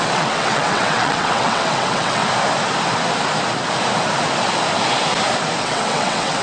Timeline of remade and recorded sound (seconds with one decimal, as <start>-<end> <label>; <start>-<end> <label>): 0.0-2.2 remade; 2.2-5.6 recorded; 5.6-6.4 remade